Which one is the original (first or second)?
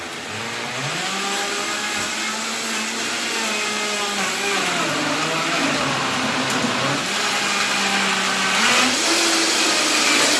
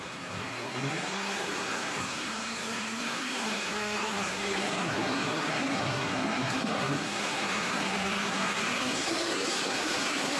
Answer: first